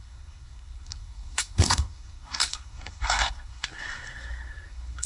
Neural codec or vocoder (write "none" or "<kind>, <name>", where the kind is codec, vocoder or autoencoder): codec, SNAC